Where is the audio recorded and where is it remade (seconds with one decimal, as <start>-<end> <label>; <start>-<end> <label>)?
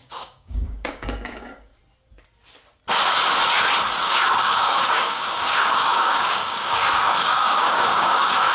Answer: 0.0-1.7 remade; 1.7-4.0 recorded; 4.0-8.5 remade